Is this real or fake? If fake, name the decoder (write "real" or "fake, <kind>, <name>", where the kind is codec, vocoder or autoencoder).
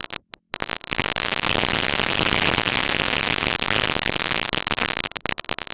real